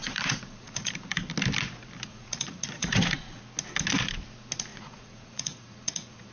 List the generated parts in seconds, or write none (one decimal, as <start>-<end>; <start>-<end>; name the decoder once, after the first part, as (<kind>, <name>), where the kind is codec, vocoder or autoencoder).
0.0-0.9 (vocoder, Vocos); 2.1-3.4; 4.7-6.3